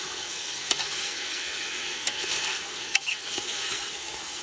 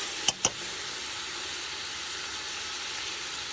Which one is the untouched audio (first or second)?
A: second